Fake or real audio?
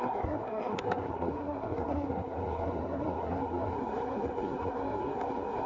fake